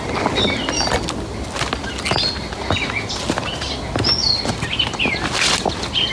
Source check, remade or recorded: recorded